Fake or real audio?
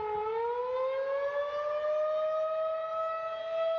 real